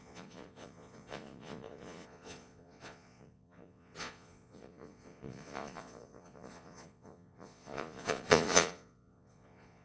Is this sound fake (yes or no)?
yes